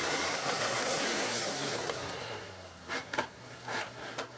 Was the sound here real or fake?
fake